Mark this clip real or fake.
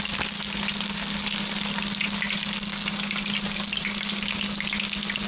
real